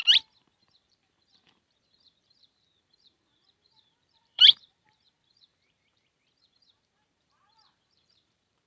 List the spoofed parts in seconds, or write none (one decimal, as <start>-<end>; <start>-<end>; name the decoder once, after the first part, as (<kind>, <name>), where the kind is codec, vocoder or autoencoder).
0.6-8.7 (vocoder, BigVGAN v2)